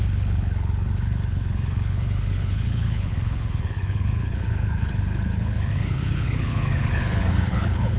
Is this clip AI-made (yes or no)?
yes